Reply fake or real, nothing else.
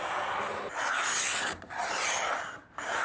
real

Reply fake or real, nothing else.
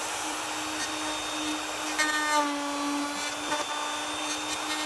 real